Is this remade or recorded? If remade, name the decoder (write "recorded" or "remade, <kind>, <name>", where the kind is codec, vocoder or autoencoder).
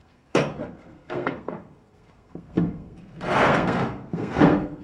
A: remade, codec, SNAC